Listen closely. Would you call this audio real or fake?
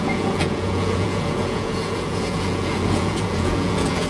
fake